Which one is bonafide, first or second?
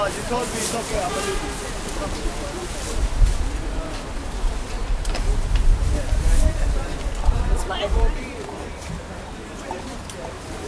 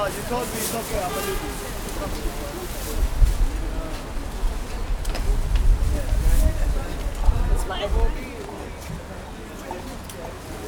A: second